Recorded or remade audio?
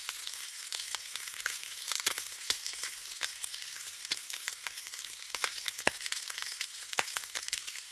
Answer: remade